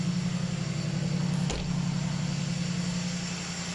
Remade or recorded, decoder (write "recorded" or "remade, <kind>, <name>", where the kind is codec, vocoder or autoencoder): recorded